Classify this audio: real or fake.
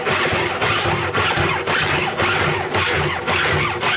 real